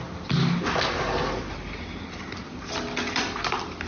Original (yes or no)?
yes